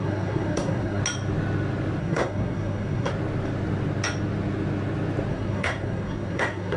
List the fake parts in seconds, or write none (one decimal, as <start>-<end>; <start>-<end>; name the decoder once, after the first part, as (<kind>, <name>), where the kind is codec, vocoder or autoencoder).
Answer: 0.0-1.0 (codec, SNAC); 2.0-3.1; 5.3-6.8